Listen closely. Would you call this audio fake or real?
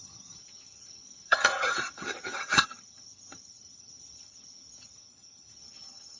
fake